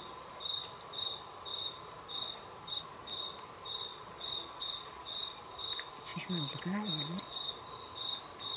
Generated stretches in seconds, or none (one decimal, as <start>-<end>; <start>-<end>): 3.9-5.4; 6.1-7.5